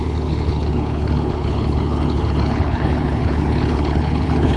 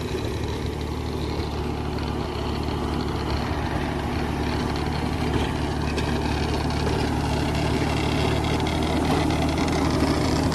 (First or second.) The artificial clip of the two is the first